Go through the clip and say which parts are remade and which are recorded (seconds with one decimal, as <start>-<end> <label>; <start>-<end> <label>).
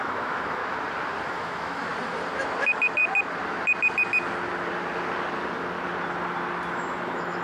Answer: 0.0-0.6 remade; 0.6-1.3 recorded; 1.3-1.9 remade; 1.9-2.6 recorded; 2.6-3.0 remade; 3.0-6.7 recorded; 6.7-7.4 remade